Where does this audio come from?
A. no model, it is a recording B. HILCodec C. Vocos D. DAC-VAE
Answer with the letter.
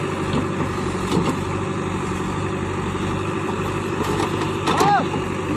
A